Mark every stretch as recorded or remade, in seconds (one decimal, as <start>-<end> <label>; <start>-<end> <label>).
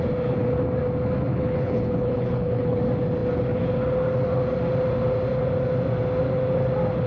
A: 0.0-1.3 recorded; 1.3-2.8 remade; 2.8-7.1 recorded